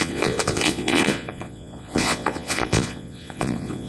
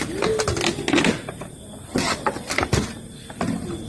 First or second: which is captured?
second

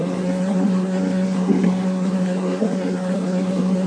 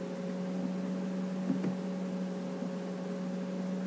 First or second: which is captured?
second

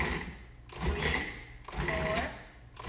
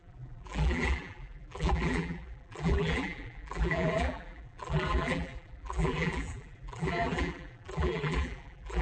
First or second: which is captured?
first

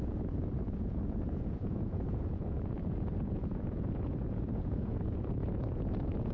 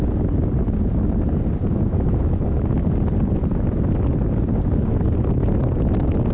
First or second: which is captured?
second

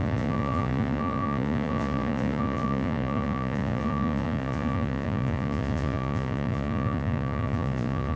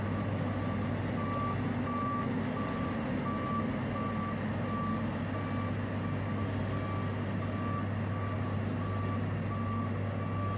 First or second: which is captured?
second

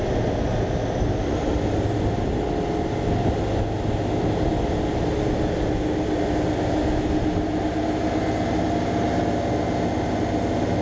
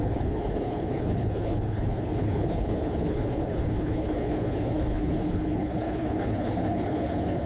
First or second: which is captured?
first